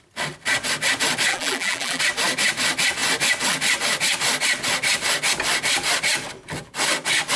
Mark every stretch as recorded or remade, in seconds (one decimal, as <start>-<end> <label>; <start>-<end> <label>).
0.0-1.3 recorded; 1.3-2.0 remade; 2.0-7.4 recorded